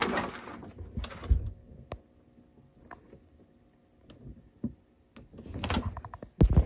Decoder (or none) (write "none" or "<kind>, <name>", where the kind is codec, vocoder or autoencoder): none